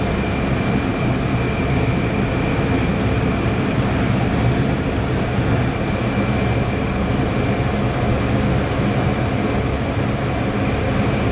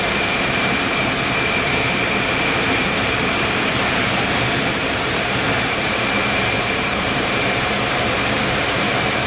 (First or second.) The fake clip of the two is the second